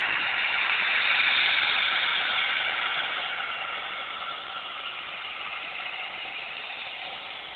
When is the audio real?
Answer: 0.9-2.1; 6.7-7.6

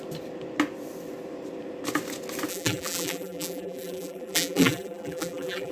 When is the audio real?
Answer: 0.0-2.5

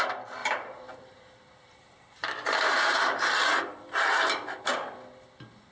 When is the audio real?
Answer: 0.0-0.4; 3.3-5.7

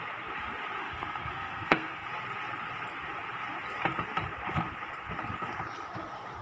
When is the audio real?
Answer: 0.0-0.8; 2.1-6.4

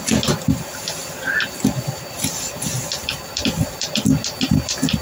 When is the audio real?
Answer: 0.0-1.0; 4.0-5.0

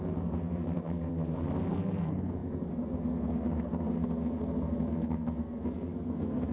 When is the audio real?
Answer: 1.1-1.7

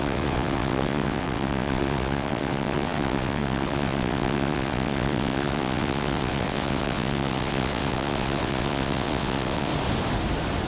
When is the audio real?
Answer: 9.7-10.7